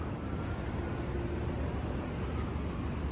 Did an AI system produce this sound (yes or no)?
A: no